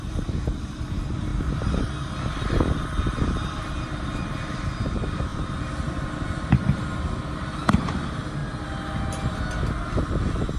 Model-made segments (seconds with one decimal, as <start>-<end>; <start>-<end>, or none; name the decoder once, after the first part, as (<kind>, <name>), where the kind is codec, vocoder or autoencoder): 0.0-1.3 (vocoder, BigVGAN v2); 3.2-8.4